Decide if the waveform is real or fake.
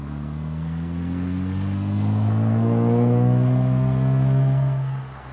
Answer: fake